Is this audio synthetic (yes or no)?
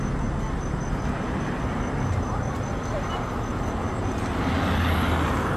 no